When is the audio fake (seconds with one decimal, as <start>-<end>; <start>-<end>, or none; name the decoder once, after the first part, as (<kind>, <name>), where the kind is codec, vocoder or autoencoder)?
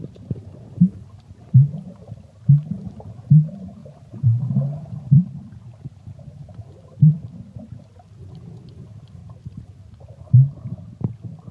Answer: 0.0-9.2 (vocoder, BigVGAN v2)